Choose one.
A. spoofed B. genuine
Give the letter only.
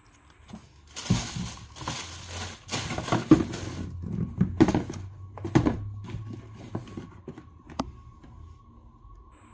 B